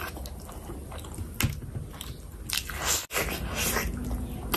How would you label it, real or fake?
real